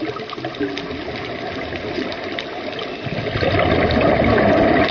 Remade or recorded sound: recorded